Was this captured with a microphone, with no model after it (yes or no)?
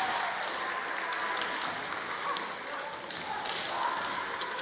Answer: yes